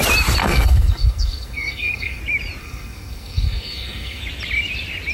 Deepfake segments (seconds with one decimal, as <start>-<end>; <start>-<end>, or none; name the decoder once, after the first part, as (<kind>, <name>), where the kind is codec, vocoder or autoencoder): 0.4-2.2 (codec, SNAC); 2.6-4.2